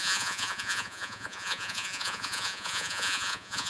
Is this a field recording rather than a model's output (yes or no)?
no